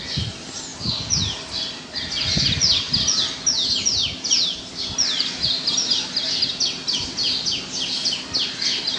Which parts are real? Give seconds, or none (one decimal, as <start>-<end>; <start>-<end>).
0.0-9.0